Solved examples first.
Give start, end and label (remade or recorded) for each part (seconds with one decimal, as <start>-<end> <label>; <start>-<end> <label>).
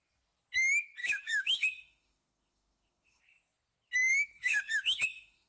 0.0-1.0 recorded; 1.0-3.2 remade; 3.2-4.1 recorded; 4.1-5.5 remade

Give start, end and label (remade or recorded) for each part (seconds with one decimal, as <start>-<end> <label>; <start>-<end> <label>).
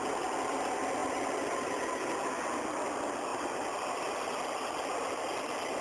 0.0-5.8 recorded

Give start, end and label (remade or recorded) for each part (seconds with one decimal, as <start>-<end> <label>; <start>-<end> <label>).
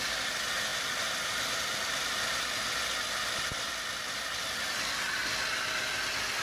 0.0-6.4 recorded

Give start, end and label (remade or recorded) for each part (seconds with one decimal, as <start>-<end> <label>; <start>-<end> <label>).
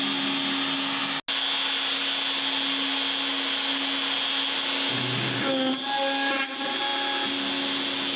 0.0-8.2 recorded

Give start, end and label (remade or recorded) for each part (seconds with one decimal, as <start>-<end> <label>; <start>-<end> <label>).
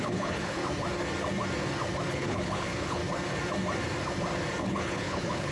0.0-0.6 remade; 0.6-2.1 recorded; 2.1-3.0 remade; 3.0-4.6 recorded; 4.6-5.5 remade